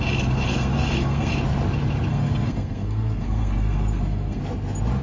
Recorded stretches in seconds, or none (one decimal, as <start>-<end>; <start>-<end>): 0.0-0.5; 1.3-2.1; 4.4-5.0